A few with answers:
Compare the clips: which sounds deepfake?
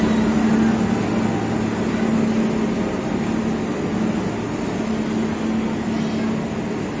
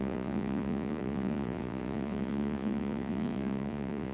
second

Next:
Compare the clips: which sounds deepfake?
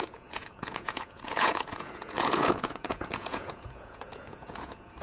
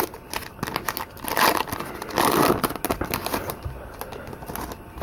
first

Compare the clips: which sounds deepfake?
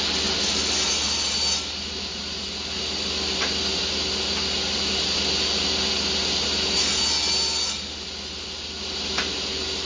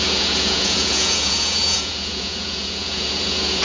second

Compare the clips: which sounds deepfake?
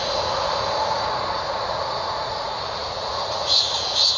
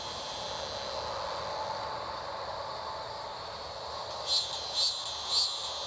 first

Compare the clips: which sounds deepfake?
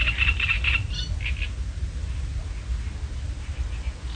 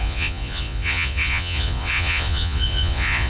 second